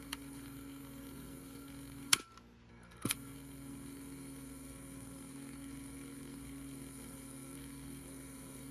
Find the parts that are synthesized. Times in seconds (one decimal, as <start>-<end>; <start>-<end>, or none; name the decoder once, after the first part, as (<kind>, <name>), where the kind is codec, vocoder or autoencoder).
0.0-2.2 (codec, SNAC); 2.7-8.7

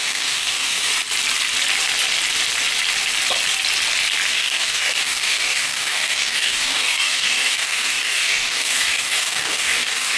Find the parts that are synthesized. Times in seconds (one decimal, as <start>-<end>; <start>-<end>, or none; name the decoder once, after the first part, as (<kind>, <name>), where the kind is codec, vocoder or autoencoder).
0.0-0.9 (codec, DAC); 4.3-10.2

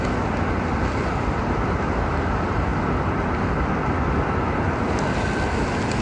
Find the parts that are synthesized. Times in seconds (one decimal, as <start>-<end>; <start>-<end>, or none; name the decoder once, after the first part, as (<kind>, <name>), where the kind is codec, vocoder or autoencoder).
none

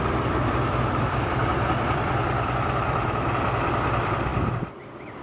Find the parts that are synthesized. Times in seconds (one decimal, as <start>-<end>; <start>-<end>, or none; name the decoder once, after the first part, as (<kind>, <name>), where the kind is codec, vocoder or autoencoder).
0.0-5.2 (vocoder, BigVGAN v2)

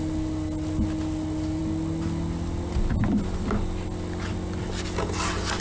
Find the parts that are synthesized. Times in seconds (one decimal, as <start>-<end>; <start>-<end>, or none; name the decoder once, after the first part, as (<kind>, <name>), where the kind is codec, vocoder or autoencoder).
none